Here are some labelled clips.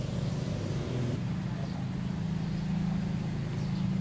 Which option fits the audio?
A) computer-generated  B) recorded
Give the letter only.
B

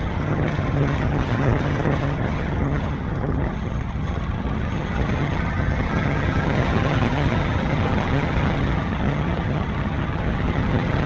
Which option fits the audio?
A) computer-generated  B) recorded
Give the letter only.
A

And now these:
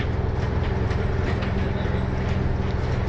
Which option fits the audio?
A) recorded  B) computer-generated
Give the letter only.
A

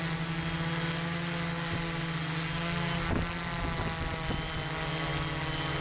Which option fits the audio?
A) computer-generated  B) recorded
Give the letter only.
B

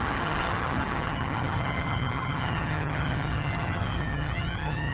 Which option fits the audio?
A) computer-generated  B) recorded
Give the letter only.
A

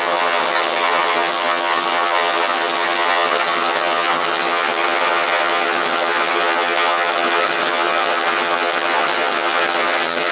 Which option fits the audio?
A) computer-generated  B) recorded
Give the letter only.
A